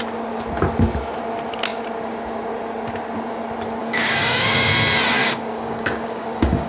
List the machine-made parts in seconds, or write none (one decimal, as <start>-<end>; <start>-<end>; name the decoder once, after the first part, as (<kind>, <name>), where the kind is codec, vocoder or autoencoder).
3.8-4.7 (codec, DAC); 5.2-6.7